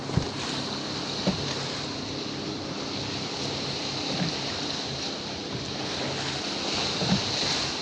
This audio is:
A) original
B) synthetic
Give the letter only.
A